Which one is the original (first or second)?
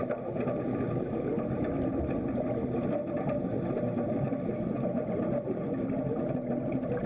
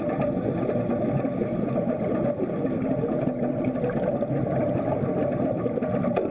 first